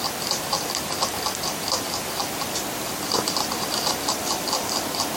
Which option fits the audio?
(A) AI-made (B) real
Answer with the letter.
A